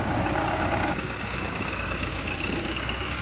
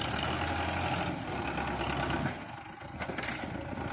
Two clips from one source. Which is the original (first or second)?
second